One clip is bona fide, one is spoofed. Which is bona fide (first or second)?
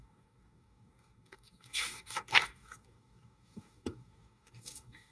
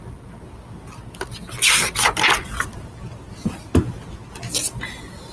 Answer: second